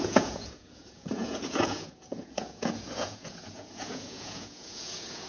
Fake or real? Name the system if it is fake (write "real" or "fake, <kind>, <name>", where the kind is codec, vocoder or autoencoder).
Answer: fake, vocoder, Vocos